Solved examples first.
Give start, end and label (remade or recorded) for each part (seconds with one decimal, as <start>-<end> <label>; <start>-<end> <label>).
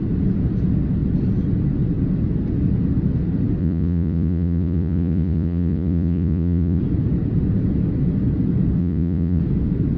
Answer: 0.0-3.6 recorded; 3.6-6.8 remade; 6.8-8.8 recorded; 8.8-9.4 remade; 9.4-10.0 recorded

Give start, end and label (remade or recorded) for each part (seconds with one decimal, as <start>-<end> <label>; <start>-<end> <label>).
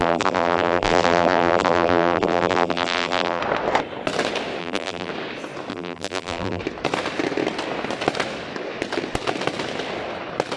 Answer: 0.0-3.4 remade; 3.4-4.6 recorded; 4.6-5.1 remade; 5.1-5.7 recorded; 5.7-6.6 remade; 6.6-10.6 recorded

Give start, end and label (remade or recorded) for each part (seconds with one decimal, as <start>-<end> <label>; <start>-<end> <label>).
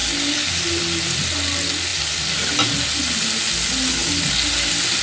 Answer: 0.0-5.0 recorded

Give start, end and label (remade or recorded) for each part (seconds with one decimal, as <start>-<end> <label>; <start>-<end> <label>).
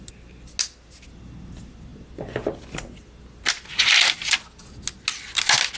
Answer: 0.0-5.8 recorded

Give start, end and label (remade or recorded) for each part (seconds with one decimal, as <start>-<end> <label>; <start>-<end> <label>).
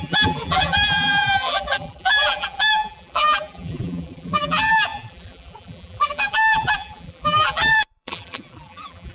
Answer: 0.0-9.1 remade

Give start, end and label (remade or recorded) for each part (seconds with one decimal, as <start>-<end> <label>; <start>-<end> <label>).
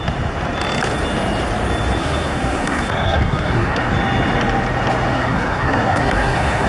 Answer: 0.0-2.0 recorded; 2.0-3.9 remade; 3.9-5.1 recorded; 5.1-6.7 remade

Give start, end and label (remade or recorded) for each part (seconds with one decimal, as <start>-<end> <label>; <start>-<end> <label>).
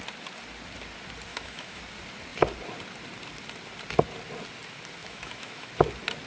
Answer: 0.0-1.3 recorded; 1.3-1.8 remade; 1.8-5.0 recorded; 5.0-5.7 remade; 5.7-6.3 recorded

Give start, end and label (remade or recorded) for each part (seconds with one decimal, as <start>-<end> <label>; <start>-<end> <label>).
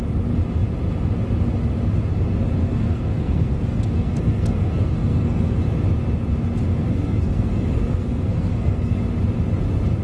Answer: 0.0-2.6 recorded; 2.6-5.6 remade; 5.6-6.6 recorded; 6.6-9.0 remade; 9.0-10.0 recorded